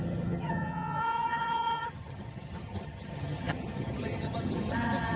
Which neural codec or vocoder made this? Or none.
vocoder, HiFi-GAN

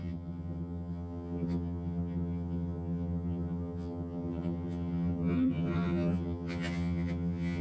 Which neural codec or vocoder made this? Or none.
vocoder, HiFi-GAN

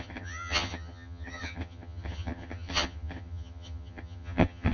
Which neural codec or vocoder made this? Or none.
vocoder, HiFi-GAN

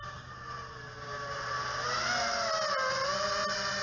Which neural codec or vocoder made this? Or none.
none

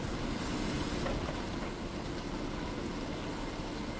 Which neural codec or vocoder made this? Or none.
none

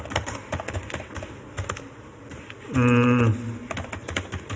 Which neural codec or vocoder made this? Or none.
none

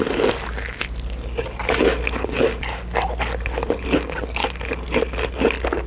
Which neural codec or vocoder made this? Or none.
none